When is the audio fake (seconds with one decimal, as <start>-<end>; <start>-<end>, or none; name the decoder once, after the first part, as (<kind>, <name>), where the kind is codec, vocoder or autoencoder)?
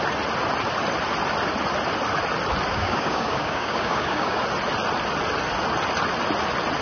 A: 2.7-4.4 (codec, DAC)